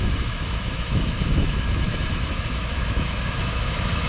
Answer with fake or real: fake